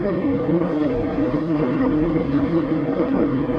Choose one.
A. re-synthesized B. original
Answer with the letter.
A